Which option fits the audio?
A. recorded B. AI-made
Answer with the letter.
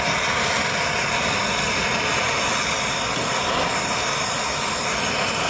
A